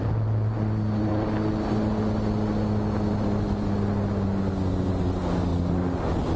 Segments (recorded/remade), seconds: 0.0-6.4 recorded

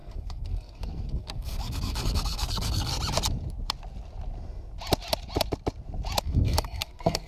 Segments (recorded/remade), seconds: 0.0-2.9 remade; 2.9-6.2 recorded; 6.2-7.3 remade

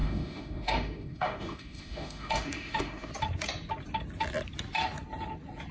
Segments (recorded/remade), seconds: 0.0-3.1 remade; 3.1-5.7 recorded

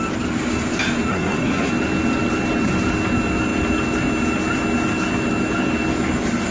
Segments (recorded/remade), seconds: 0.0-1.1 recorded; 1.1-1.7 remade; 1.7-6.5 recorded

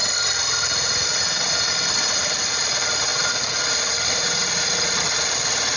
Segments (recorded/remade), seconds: 0.0-5.8 recorded

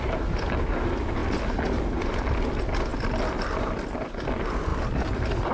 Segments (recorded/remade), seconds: 0.0-5.5 recorded